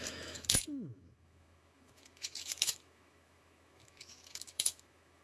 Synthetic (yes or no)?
yes